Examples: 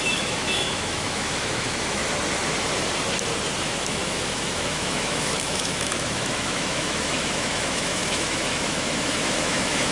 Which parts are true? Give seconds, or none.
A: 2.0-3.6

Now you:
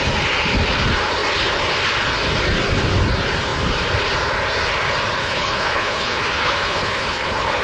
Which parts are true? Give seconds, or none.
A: 0.0-5.2

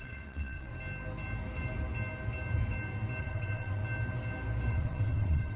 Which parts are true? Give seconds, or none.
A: 0.7-3.2; 3.8-4.7

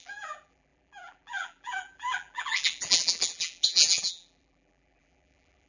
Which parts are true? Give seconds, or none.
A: none

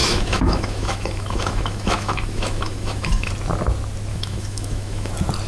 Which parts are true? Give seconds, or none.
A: 3.3-4.1; 5.1-5.5

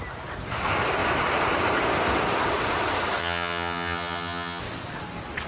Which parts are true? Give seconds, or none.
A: 0.0-3.2; 4.6-5.5

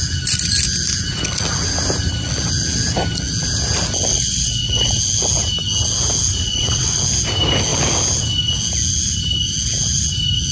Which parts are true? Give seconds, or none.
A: 0.0-4.1; 5.0-6.4; 7.0-10.5

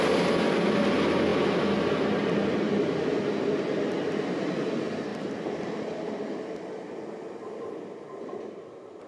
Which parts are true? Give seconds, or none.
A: 0.0-5.1; 7.3-9.1